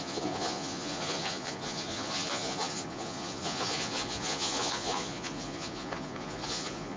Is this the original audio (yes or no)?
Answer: no